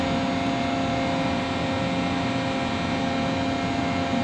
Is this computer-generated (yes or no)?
no